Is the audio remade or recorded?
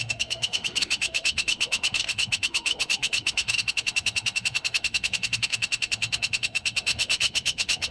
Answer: remade